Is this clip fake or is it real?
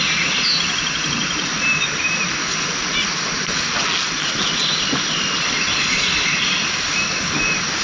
real